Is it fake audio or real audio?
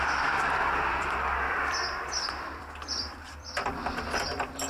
fake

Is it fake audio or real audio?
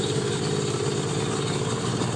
real